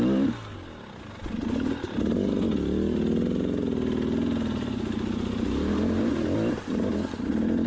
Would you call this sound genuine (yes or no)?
yes